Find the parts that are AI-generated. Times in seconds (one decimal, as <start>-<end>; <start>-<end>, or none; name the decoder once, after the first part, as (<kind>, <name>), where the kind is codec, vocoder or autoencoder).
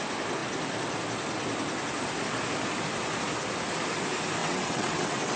4.4-5.4 (vocoder, WaveNeXt)